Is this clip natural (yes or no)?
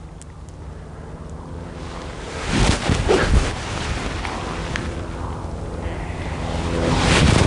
yes